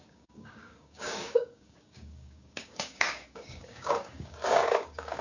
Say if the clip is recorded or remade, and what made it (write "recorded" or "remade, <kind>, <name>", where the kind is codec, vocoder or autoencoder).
remade, codec, DAC